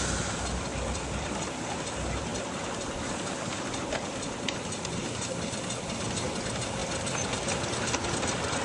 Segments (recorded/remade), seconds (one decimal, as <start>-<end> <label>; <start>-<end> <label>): 0.0-8.6 recorded